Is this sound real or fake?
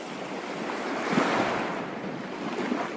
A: real